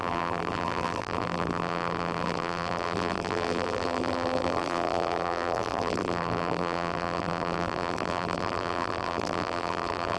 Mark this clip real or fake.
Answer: fake